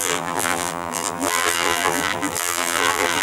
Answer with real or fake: fake